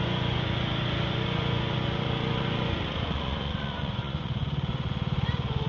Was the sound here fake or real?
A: fake